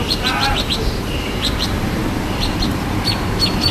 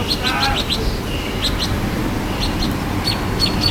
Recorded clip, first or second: second